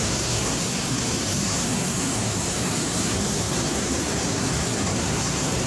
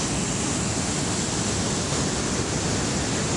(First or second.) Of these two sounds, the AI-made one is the first